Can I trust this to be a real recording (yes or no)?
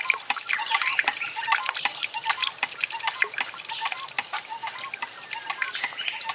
yes